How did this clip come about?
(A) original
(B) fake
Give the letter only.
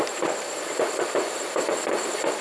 B